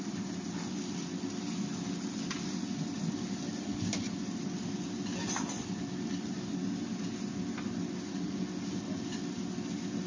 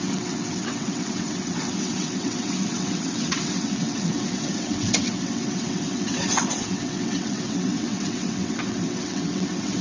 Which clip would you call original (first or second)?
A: first